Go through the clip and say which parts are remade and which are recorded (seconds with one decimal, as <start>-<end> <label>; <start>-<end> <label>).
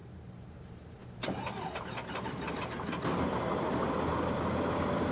0.0-0.5 remade; 0.5-5.1 recorded